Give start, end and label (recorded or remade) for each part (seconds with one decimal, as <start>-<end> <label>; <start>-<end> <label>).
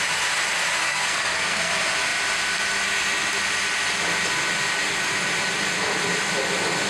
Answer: 0.0-0.8 recorded; 0.8-1.7 remade; 1.7-6.9 recorded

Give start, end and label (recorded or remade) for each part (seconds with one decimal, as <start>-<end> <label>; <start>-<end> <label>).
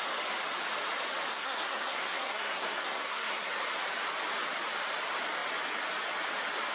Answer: 0.0-1.3 recorded; 1.3-3.5 remade; 3.5-6.7 recorded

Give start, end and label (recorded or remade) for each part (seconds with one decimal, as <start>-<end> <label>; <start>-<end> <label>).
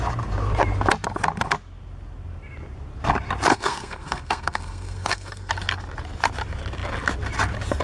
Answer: 0.0-3.5 recorded; 3.5-5.5 remade; 5.5-7.8 recorded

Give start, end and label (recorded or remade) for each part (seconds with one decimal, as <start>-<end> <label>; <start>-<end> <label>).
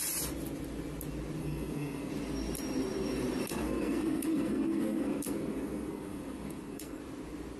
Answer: 0.0-1.4 recorded; 1.4-2.1 remade; 2.1-3.5 recorded; 3.5-7.0 remade; 7.0-7.6 recorded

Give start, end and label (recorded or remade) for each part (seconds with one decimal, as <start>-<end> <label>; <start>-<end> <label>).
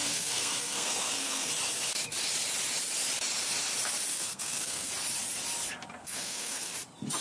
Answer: 0.0-1.5 remade; 1.5-4.1 recorded; 4.1-4.9 remade; 4.9-6.0 recorded; 6.0-6.7 remade; 6.7-7.2 recorded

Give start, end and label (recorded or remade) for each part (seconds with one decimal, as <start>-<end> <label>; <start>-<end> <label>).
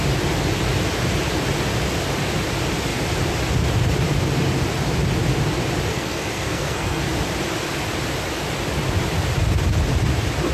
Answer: 0.0-5.9 recorded; 5.9-7.1 remade; 7.1-10.5 recorded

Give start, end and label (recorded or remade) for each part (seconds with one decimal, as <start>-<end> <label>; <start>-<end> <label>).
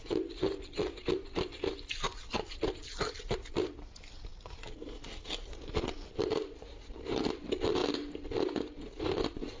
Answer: 0.0-9.6 recorded